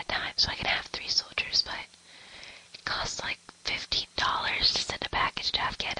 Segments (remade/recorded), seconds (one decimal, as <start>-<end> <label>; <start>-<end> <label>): 0.0-6.0 recorded